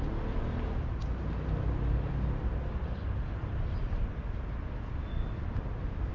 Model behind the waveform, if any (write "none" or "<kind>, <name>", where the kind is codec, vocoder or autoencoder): none